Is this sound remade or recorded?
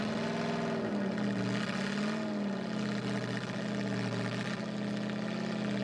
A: recorded